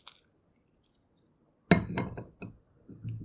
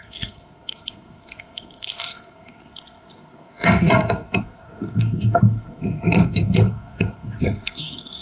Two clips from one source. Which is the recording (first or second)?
first